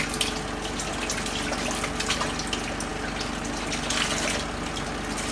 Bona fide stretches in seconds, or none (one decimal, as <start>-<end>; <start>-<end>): 0.0-5.3